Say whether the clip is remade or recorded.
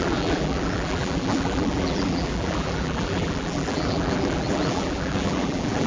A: remade